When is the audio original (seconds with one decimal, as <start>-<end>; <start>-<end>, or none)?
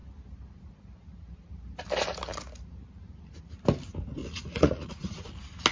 0.0-4.2; 5.3-5.7